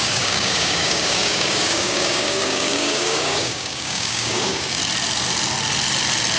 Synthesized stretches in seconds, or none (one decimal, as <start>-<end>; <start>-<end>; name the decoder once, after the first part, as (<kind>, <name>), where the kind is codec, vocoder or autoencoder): 0.0-4.8 (codec, DAC)